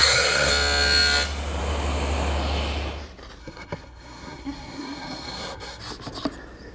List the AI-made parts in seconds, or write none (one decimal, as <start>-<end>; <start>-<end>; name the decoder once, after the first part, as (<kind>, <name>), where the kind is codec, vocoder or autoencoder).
0.0-0.5 (codec, SNAC); 3.4-5.8